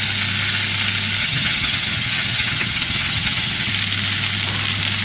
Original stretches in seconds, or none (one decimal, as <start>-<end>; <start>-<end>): 0.0-1.2; 3.7-5.0